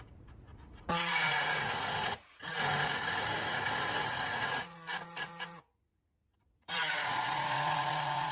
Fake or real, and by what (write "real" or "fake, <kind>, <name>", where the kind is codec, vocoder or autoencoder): fake, vocoder, Vocos